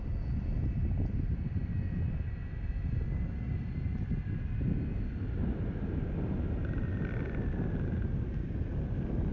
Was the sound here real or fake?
real